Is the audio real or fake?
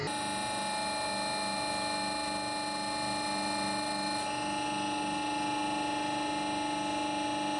real